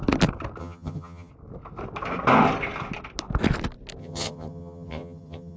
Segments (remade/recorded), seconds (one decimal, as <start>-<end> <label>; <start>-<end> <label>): 0.0-0.6 recorded; 0.6-1.3 remade; 1.3-4.0 recorded; 4.0-5.6 remade